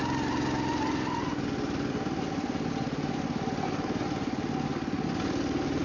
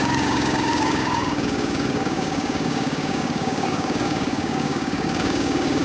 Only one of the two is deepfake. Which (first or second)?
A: second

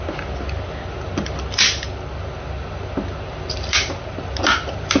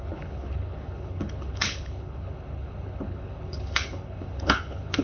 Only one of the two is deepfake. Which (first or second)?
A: second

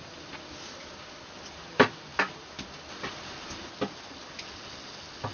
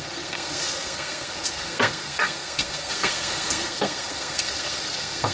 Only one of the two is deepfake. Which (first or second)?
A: second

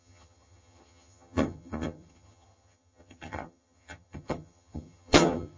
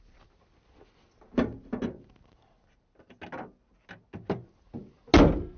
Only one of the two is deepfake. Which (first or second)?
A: first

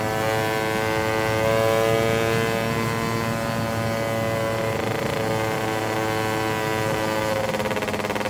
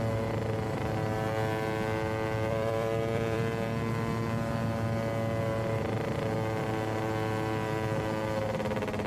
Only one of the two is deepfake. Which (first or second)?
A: second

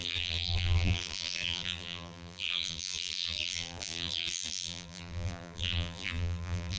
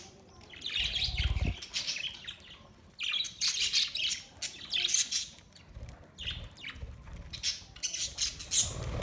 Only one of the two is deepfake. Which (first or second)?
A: first